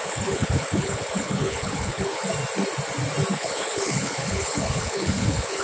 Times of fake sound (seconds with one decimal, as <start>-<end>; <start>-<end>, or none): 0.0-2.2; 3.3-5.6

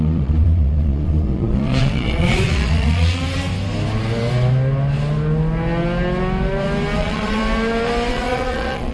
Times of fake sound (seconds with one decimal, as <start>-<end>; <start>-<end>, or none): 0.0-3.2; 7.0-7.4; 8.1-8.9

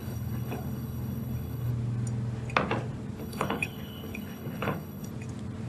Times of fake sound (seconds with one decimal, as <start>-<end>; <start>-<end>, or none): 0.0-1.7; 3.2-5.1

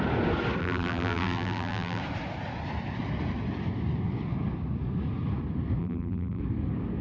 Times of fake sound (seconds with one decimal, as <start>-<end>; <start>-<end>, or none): 0.6-2.0; 5.8-6.4

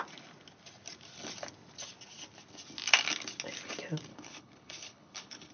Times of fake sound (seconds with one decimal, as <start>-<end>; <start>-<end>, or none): 4.1-5.5

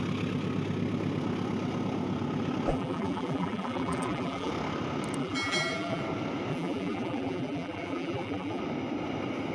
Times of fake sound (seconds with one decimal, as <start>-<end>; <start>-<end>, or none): 2.7-4.5; 5.2-6.0; 6.5-8.6

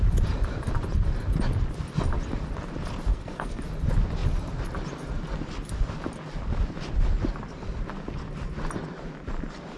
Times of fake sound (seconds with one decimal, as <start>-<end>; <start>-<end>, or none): 3.1-3.6